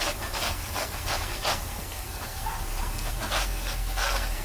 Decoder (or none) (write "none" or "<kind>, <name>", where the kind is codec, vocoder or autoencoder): codec, SNAC